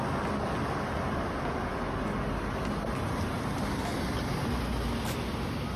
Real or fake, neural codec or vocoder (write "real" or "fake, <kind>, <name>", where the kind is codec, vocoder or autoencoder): real